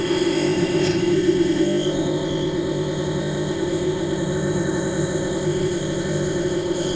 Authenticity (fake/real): fake